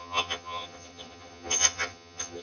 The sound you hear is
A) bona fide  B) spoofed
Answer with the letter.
B